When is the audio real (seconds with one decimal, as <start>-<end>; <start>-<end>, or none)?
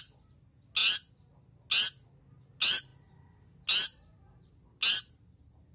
0.0-5.7